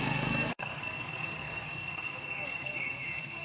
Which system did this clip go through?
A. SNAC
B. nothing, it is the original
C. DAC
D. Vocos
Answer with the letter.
A